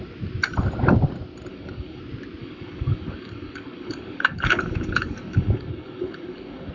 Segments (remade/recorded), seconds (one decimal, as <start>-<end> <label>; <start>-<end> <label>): 0.0-1.5 recorded; 1.5-2.0 remade; 2.0-2.4 recorded; 2.4-6.7 remade